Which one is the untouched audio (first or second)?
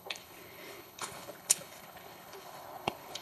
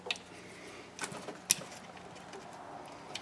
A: second